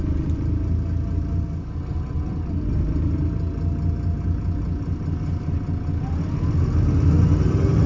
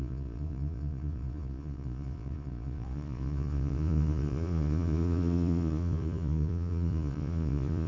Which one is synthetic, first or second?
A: second